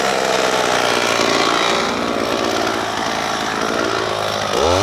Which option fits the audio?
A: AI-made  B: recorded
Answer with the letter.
B